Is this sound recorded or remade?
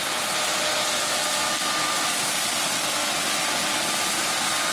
recorded